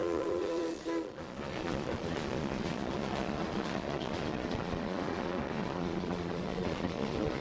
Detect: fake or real fake